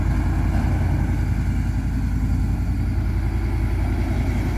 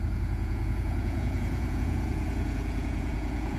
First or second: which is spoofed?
second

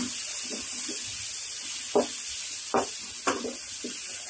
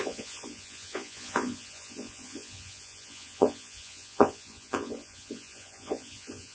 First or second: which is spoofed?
second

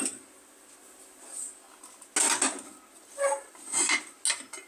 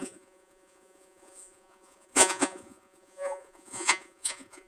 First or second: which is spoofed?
second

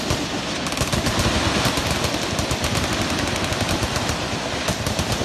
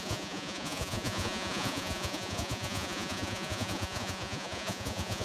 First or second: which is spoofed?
second